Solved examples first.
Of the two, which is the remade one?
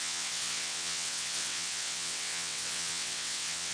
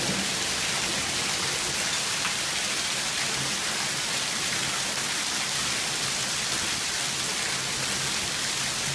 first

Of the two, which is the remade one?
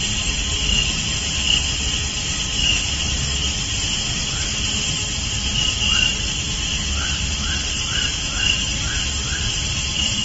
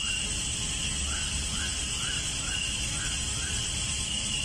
first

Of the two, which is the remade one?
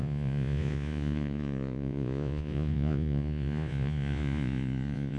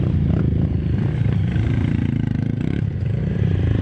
first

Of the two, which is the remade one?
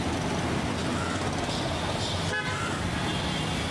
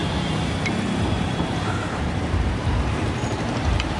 second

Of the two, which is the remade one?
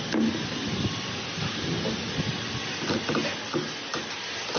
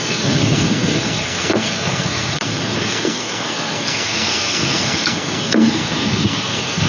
second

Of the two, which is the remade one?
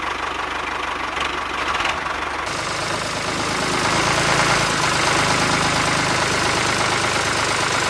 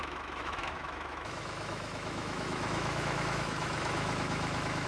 second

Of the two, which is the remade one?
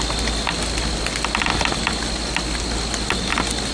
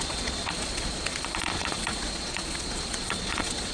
second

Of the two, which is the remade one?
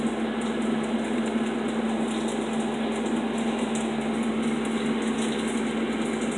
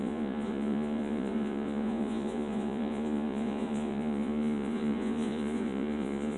second